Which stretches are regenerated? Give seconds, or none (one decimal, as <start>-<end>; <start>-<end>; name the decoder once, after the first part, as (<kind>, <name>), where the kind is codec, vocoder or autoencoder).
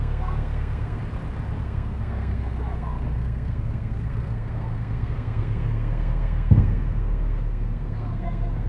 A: 0.0-1.0 (codec, SNAC); 1.6-8.7